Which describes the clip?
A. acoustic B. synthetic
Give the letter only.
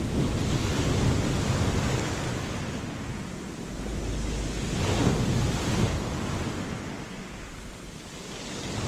A